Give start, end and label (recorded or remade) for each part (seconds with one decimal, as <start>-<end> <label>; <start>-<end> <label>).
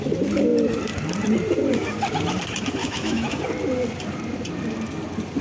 0.0-2.8 recorded; 2.8-3.4 remade; 3.4-5.4 recorded